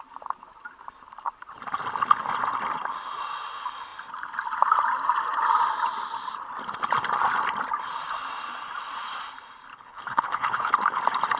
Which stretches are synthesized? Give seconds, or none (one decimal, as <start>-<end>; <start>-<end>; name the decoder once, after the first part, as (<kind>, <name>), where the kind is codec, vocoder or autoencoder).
9.7-10.7 (codec, HILCodec)